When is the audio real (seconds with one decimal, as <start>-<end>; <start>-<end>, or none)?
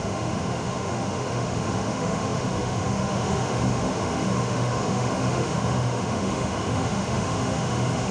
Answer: none